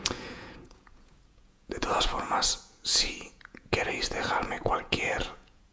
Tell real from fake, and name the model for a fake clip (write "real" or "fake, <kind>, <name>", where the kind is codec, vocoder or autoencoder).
fake, vocoder, Vocos